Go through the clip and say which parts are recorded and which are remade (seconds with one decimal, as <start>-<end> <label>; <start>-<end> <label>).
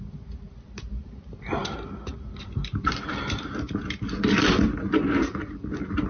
0.0-6.1 recorded